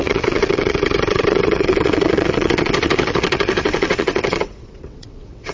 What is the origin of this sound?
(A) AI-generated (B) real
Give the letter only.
A